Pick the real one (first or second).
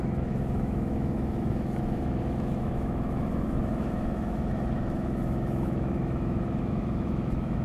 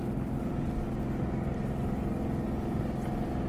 second